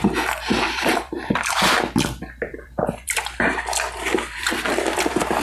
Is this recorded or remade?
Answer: remade